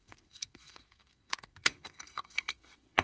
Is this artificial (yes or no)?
yes